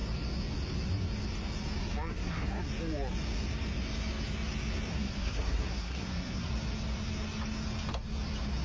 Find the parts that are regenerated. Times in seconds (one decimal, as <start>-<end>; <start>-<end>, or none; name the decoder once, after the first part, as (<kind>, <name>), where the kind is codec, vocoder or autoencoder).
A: 2.1-2.6 (codec, SNAC); 4.9-6.5